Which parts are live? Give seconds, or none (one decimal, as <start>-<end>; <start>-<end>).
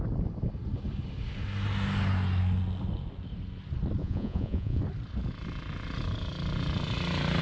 0.0-4.0; 4.8-7.4